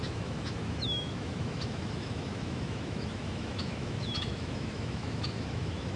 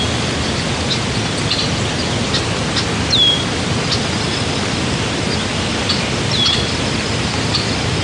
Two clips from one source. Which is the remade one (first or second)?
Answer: first